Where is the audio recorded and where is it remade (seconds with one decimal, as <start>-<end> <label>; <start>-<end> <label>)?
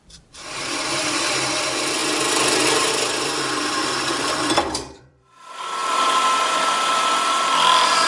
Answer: 0.0-2.0 remade; 2.0-2.9 recorded; 2.9-5.8 remade; 5.8-6.7 recorded; 6.7-8.1 remade